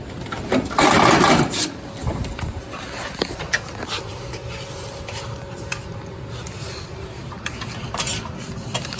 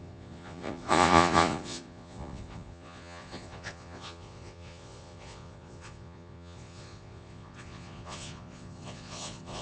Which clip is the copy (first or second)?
second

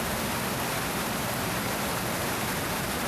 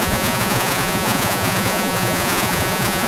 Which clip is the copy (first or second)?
second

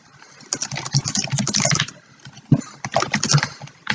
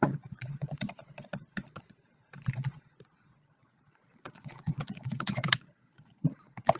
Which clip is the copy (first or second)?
second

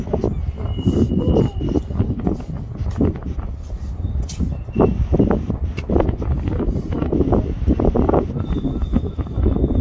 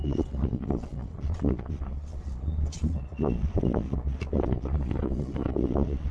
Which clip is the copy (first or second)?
second